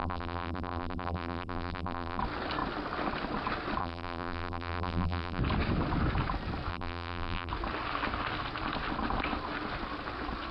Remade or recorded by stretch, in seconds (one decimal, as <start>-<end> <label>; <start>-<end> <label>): 0.0-2.2 remade; 2.2-3.8 recorded; 3.8-5.4 remade; 5.4-6.7 recorded; 6.7-7.5 remade; 7.5-10.5 recorded